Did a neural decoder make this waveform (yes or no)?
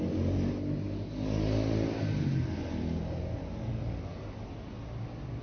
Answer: no